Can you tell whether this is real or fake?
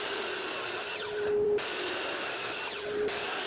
fake